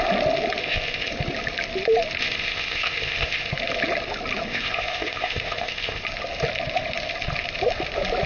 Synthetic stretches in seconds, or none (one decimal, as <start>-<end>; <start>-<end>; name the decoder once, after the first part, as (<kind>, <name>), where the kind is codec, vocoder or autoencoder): 0.6-1.1 (codec, ZipCodec); 2.2-3.5; 4.5-6.0